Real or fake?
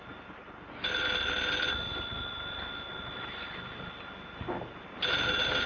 real